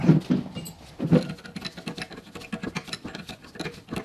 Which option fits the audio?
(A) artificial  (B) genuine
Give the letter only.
B